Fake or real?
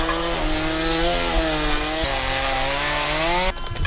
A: real